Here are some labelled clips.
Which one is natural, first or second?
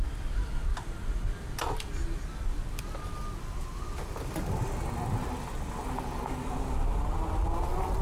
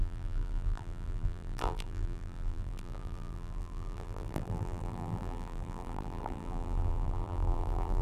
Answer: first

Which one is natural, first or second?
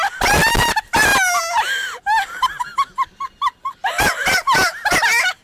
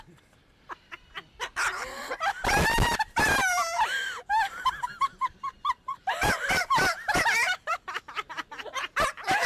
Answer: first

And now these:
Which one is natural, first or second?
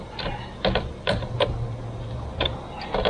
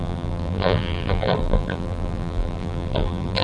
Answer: first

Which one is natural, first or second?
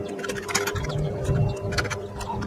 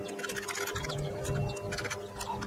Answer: second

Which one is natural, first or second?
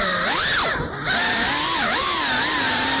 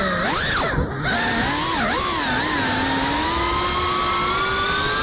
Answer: second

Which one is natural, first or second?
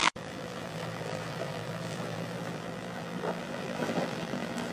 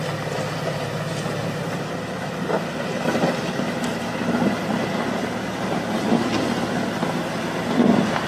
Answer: second